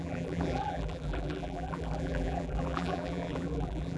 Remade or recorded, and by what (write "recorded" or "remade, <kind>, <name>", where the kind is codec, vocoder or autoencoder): remade, vocoder, BigVGAN v2